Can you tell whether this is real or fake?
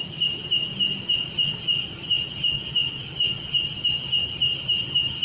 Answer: real